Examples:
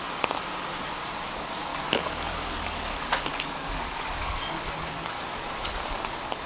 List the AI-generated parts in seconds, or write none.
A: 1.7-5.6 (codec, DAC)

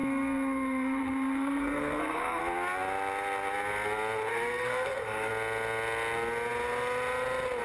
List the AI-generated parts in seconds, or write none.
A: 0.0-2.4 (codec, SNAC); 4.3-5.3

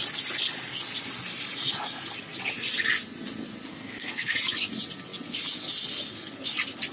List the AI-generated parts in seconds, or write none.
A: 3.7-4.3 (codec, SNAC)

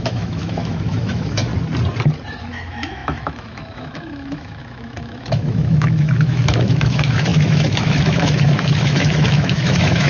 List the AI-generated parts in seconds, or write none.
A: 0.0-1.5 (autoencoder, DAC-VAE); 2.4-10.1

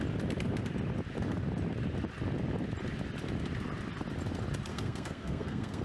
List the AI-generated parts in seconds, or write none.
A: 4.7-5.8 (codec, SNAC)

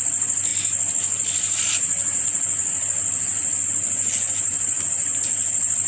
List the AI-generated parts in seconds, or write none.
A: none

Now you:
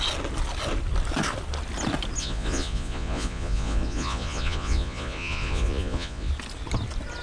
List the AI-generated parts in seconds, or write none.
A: 2.2-6.3 (vocoder, Vocos)